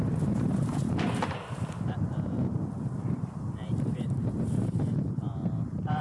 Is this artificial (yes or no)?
yes